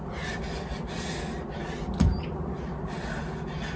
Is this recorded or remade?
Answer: recorded